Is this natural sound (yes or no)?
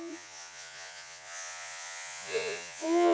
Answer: no